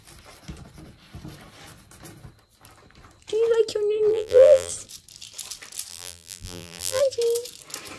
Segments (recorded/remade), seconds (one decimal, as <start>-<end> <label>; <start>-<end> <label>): 0.0-4.1 recorded; 4.1-4.7 remade; 4.7-5.9 recorded; 5.9-7.0 remade; 7.0-8.0 recorded